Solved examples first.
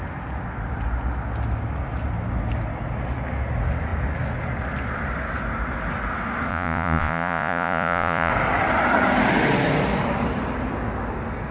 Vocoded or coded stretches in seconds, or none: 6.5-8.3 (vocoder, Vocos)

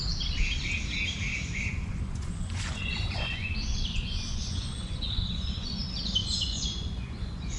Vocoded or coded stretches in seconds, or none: 1.3-5.8 (vocoder, Vocos); 6.2-7.6

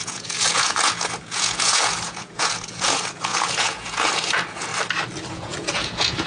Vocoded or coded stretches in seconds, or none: 0.0-4.7 (vocoder, Vocos); 5.3-6.3